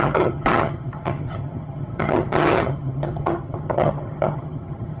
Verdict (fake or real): fake